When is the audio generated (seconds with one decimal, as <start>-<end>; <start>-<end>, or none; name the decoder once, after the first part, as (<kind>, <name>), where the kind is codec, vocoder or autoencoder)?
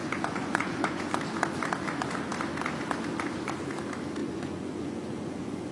0.0-1.2 (vocoder, Vocos); 4.2-5.7